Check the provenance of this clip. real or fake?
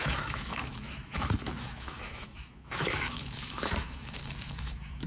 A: fake